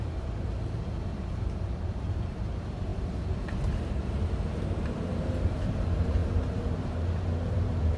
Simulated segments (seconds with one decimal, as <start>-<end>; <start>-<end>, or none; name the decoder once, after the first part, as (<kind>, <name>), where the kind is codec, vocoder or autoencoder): 0.0-8.0 (vocoder, BigVGAN v2)